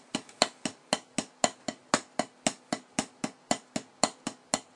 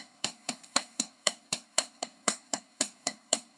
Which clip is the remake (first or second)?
second